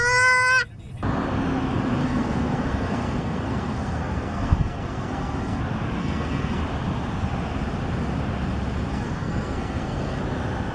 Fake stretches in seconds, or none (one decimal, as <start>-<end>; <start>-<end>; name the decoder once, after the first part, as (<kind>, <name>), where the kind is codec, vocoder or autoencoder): 2.0-5.6 (codec, SNAC); 6.0-6.6; 8.9-10.2